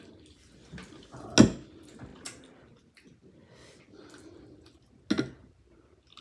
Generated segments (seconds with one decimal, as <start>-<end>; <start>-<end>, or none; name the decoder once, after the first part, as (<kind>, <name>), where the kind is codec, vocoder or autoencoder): none